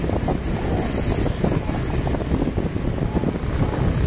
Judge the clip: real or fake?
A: real